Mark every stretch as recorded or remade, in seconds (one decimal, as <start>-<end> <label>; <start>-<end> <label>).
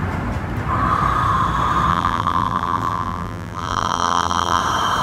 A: 0.0-1.9 recorded; 1.9-4.6 remade; 4.6-5.0 recorded